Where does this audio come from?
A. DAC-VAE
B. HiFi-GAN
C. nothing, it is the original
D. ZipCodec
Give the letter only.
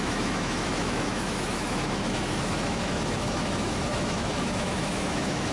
A